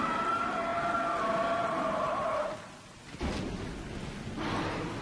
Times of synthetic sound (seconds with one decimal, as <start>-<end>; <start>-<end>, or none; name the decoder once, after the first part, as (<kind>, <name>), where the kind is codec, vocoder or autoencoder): none